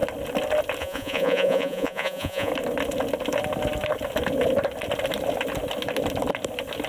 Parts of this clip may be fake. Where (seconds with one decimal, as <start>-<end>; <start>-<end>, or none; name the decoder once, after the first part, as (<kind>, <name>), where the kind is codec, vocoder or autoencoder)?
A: 0.8-2.5 (vocoder, Vocos)